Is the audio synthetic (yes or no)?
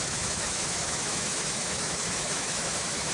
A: yes